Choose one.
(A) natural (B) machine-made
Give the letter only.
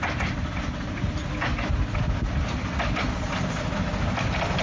A